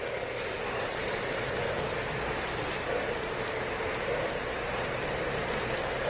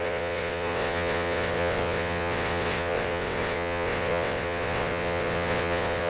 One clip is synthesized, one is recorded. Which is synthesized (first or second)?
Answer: second